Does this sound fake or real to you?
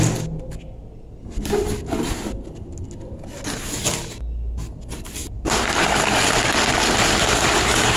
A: real